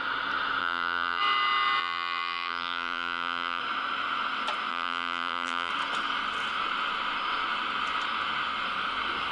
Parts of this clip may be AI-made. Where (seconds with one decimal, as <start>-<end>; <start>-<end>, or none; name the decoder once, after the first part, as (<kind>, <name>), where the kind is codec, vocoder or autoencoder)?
0.6-1.2 (vocoder, BigVGAN v2); 1.8-3.6; 4.7-5.7